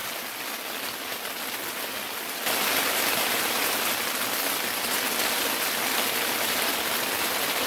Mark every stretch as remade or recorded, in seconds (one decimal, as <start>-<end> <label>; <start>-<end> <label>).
0.0-7.7 recorded